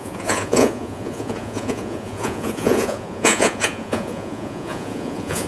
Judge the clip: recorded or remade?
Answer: remade